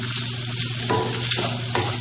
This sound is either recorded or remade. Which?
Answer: recorded